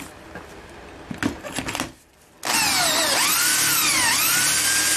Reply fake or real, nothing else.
real